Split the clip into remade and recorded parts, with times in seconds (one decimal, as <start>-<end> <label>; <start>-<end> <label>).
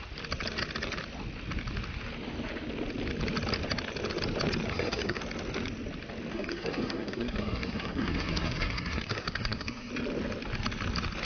0.0-4.7 recorded; 4.7-5.2 remade; 5.2-6.3 recorded; 6.3-9.9 remade; 9.9-11.2 recorded